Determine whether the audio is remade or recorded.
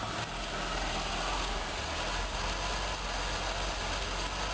recorded